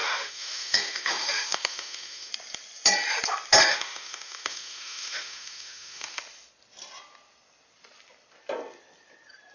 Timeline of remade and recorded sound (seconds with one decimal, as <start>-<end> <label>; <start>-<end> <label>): 0.0-2.3 remade; 2.3-3.7 recorded; 3.7-6.2 remade; 6.2-9.5 recorded